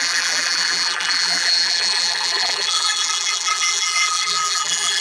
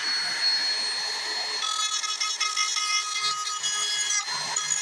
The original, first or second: second